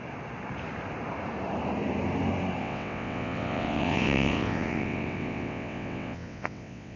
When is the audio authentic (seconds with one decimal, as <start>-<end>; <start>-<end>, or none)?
0.0-2.6